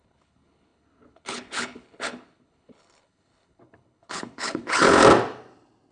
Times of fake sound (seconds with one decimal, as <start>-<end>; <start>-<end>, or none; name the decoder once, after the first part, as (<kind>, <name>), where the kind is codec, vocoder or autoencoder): 0.0-5.0 (codec, HILCodec)